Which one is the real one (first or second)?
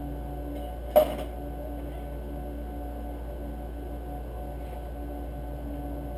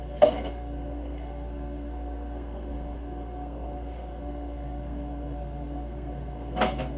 first